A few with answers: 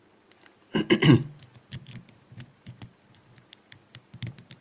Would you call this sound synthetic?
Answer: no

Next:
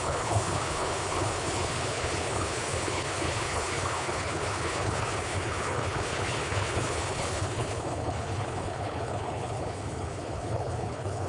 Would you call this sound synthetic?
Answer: yes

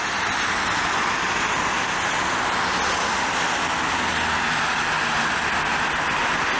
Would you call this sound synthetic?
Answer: no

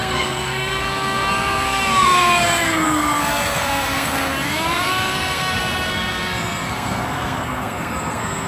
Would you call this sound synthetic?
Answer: yes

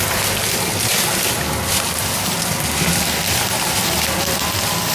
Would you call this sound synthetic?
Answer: no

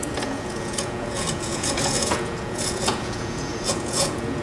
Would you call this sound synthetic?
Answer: yes